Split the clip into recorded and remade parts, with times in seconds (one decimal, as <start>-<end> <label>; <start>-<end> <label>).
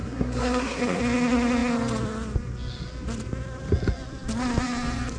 0.0-1.0 remade; 1.0-5.2 recorded